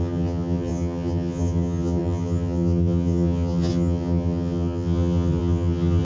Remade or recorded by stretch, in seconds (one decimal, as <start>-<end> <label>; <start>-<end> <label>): 0.0-6.0 remade